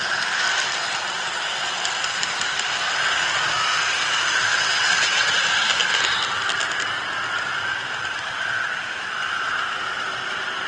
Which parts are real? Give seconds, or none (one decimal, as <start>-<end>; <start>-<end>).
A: 0.0-4.5; 5.3-10.7